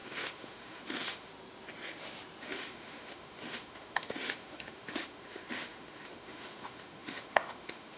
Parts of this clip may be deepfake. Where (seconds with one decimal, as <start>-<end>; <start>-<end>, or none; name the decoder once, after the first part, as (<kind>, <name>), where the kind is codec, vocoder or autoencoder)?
0.0-1.3 (autoencoder, DAC-VAE); 2.4-8.0